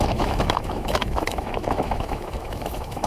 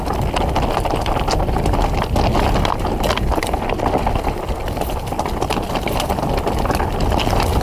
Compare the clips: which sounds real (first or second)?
second